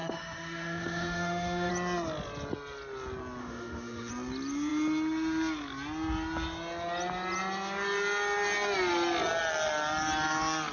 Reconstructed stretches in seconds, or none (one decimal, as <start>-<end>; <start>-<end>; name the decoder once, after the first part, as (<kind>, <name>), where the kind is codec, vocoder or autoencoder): 0.0-1.7 (autoencoder, DAC-VAE); 3.4-4.1